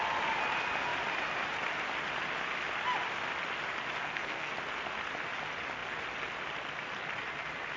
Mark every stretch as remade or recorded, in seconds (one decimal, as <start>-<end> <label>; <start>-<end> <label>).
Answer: 0.0-4.0 recorded; 4.0-4.5 remade; 4.5-7.8 recorded